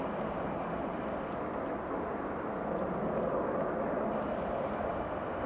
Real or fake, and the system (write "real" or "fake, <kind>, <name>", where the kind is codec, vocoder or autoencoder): real